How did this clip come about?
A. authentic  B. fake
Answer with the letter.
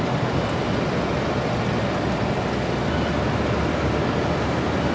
A